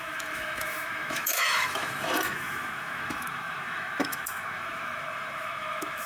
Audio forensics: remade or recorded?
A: remade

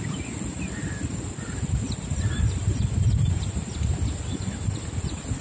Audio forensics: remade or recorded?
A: recorded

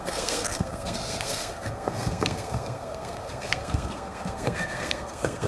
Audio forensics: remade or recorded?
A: remade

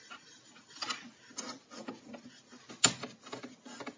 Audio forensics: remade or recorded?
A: recorded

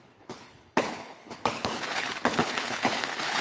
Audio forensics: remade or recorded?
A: remade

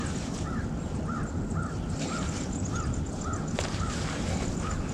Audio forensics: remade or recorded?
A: recorded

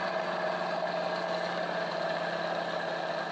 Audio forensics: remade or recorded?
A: recorded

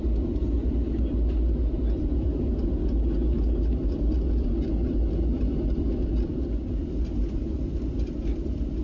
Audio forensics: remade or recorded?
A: recorded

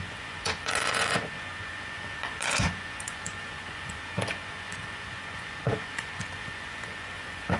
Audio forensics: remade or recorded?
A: remade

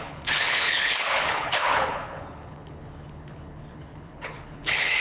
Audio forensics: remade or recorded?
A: remade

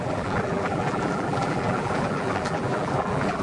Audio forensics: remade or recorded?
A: remade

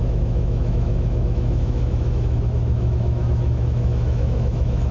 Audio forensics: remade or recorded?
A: remade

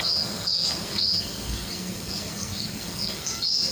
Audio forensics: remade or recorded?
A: remade